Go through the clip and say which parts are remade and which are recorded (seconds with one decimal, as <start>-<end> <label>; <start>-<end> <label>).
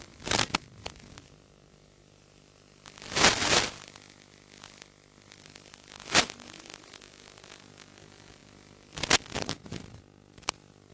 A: 0.0-10.9 remade